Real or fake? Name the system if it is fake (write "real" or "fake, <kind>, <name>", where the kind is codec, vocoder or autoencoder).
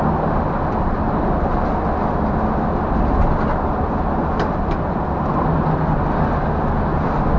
real